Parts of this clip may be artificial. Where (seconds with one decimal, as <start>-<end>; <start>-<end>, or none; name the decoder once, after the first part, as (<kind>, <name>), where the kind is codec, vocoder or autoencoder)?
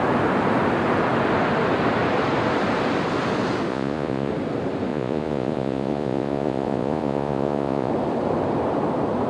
3.7-4.3 (vocoder, Vocos); 4.9-7.9